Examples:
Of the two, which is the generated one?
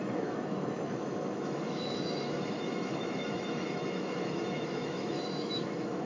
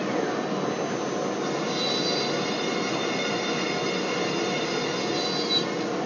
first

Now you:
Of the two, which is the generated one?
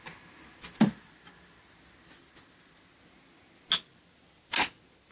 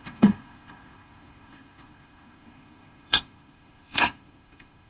second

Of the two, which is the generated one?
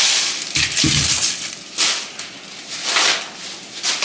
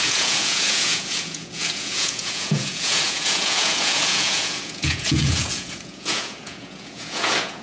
second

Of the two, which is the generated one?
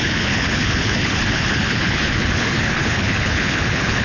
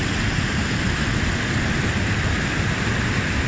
first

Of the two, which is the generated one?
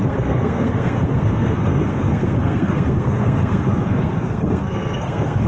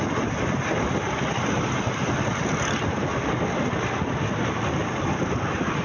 first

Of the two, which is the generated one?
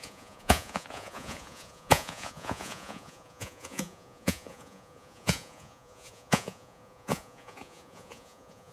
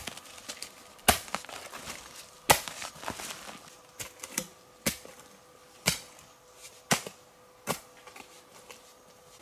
first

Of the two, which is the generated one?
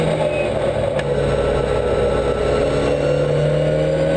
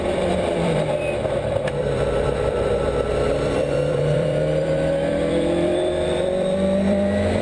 second